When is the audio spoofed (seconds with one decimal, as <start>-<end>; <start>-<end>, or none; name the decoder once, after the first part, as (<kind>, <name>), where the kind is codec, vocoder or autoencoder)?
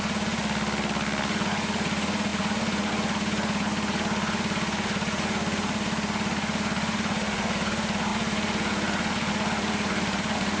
0.0-0.4 (vocoder, Vocos); 1.3-10.6